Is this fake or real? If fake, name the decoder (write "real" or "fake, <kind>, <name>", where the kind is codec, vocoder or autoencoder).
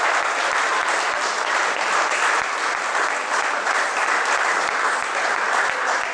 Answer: real